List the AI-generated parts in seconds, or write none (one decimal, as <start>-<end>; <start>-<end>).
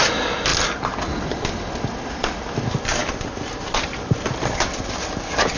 3.0-4.4